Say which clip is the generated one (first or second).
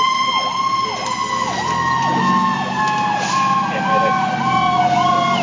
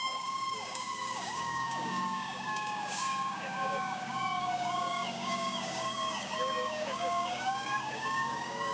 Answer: second